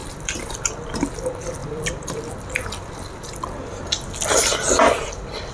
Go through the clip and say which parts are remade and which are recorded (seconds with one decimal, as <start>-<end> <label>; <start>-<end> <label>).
0.0-0.6 remade; 0.6-1.6 recorded; 1.6-2.5 remade; 2.5-5.5 recorded